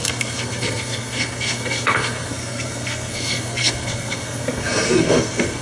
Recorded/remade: remade